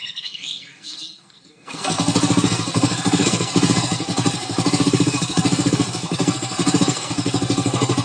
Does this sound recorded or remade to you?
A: remade